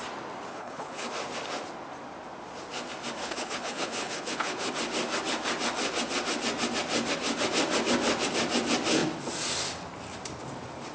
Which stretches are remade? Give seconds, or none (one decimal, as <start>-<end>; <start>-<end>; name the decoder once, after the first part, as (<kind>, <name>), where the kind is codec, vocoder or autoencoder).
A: 0.5-1.1 (codec, HILCodec); 3.2-4.7